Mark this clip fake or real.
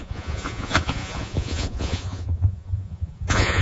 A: fake